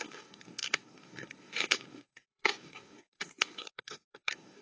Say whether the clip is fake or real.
fake